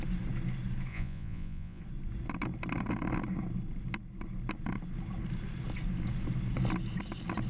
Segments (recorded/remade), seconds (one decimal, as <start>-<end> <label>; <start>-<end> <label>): 0.0-0.9 recorded; 0.9-1.8 remade; 1.8-7.5 recorded